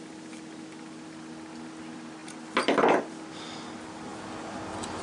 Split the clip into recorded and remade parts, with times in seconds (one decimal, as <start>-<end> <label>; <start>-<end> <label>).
0.0-5.0 recorded